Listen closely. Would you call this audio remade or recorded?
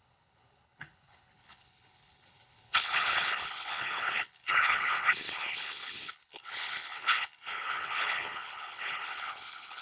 remade